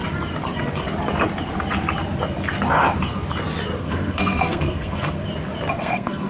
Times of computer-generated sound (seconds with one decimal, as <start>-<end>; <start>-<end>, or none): 3.8-5.2; 5.8-6.3